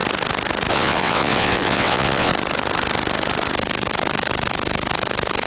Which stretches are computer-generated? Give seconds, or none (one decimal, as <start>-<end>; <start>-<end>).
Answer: 0.7-2.3